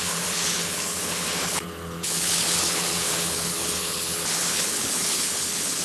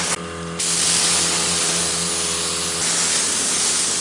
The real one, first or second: second